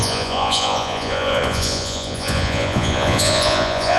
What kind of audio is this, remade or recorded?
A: remade